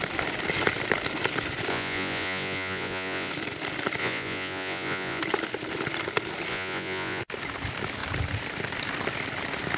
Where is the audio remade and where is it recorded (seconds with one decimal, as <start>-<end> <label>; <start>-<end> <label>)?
0.0-1.7 recorded; 1.7-3.3 remade; 3.3-4.0 recorded; 4.0-5.2 remade; 5.2-6.5 recorded; 6.5-7.2 remade; 7.2-9.8 recorded